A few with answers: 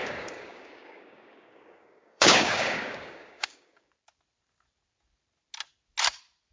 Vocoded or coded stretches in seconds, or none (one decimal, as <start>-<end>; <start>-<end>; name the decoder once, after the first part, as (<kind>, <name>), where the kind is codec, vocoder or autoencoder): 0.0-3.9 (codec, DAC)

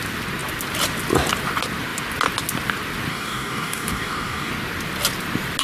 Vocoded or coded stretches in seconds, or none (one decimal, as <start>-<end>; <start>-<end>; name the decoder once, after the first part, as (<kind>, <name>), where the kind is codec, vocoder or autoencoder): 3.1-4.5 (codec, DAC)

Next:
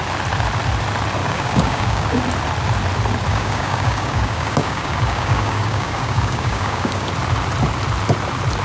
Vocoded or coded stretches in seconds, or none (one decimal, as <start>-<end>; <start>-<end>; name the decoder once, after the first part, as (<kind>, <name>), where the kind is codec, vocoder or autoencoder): 1.2-2.2 (codec, DAC); 3.3-7.1

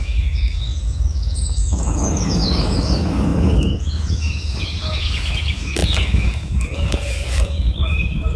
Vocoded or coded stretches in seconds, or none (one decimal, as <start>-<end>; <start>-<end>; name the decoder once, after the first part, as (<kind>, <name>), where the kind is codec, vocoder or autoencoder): 0.0-8.4 (codec, DAC)

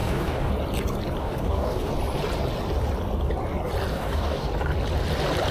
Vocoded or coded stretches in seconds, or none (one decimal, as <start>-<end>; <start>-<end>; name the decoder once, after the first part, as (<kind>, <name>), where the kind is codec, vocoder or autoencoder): 0.0-0.5 (codec, DAC); 1.2-1.9; 3.9-4.5